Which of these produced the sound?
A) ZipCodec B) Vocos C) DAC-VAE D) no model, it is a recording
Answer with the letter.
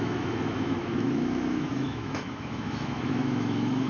C